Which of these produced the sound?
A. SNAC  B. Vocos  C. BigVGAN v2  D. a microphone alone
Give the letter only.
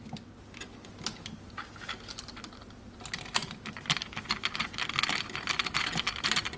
D